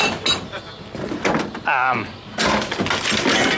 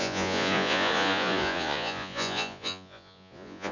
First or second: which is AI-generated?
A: second